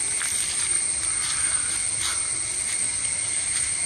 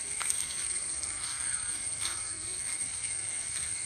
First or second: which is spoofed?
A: second